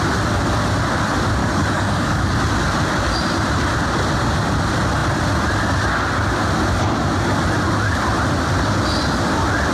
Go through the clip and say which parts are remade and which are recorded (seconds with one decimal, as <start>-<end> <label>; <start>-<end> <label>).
0.0-1.4 recorded; 1.4-2.4 remade; 2.4-9.7 recorded